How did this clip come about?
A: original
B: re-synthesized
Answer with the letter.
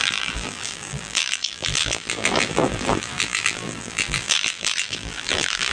B